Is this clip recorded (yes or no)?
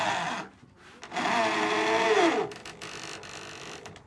yes